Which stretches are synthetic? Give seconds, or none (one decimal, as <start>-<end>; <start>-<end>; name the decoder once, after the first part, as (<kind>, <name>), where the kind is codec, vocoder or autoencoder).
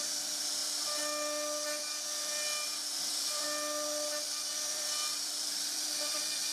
0.0-0.6 (vocoder, BigVGAN v2); 4.5-6.5